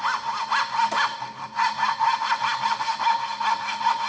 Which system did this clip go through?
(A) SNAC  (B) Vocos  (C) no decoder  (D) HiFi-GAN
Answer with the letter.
C